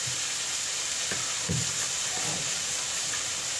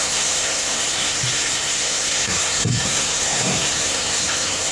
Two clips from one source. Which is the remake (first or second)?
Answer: second